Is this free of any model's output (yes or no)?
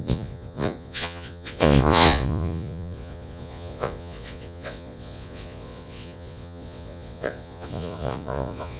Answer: no